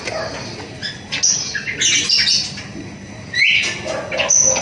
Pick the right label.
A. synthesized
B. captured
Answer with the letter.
B